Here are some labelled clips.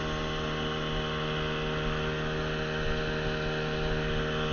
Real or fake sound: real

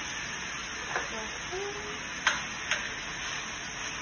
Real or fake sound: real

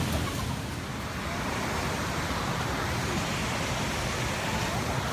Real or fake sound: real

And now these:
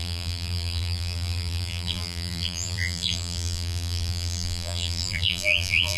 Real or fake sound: fake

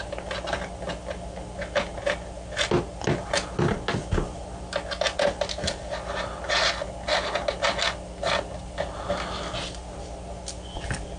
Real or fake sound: real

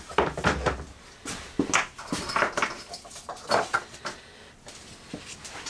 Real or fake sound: real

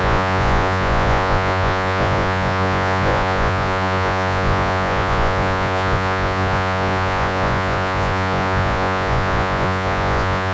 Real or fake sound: fake